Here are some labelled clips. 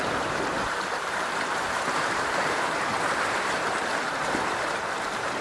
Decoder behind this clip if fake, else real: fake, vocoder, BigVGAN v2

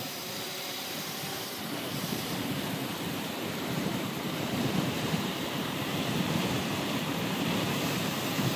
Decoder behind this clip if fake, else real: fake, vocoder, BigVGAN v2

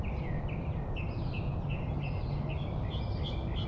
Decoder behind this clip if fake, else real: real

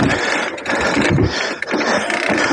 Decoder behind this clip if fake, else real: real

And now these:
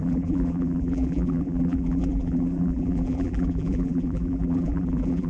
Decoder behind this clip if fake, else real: fake, vocoder, BigVGAN v2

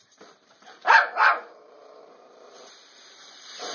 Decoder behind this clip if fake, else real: fake, vocoder, BigVGAN v2